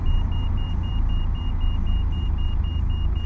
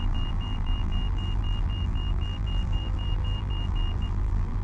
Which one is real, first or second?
first